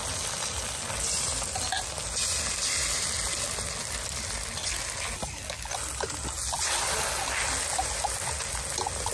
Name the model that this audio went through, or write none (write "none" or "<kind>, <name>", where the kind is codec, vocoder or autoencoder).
none